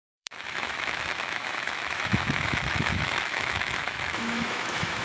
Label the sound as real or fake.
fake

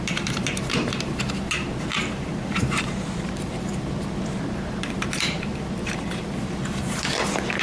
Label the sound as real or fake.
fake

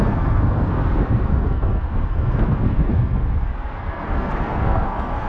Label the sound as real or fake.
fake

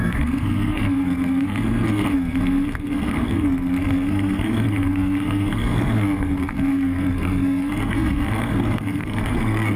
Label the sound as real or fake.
fake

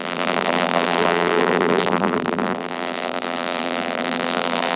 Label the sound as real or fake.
fake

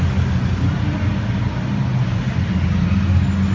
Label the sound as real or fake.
real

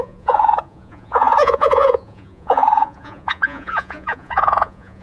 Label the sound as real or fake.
fake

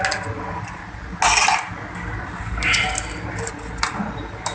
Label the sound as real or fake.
real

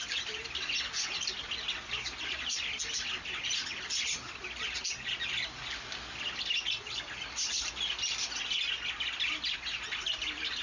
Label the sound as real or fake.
real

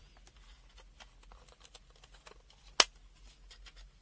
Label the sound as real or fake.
real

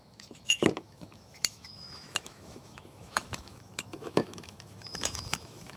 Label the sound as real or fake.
fake